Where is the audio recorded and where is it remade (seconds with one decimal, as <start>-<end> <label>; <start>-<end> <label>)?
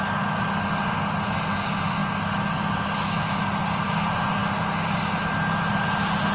0.0-6.3 recorded